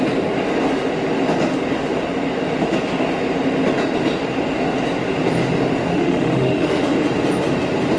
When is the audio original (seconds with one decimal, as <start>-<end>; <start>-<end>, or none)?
0.0-5.9; 6.8-8.0